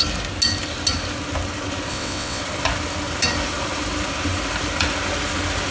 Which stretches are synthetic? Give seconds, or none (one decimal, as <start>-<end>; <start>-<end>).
1.9-2.4